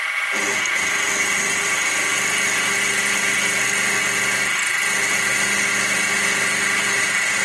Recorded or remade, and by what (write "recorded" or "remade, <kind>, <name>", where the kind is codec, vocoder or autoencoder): recorded